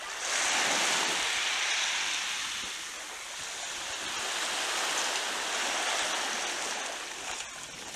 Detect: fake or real real